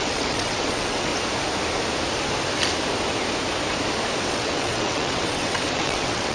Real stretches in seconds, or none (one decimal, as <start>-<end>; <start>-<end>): 1.1-4.3